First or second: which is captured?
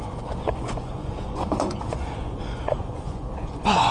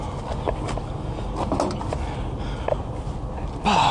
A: second